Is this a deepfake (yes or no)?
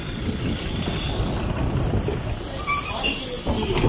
no